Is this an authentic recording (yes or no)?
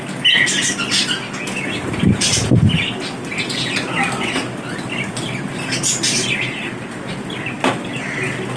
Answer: yes